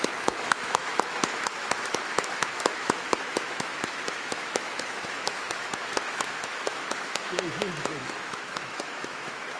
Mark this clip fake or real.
fake